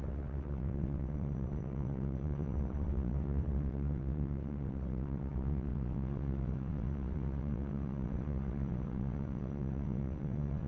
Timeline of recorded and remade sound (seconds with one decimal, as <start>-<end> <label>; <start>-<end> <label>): 0.0-10.7 remade